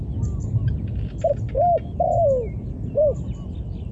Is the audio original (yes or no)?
yes